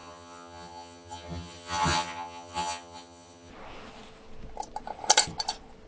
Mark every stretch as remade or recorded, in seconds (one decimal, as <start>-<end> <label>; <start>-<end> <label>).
0.0-3.5 remade; 3.5-5.9 recorded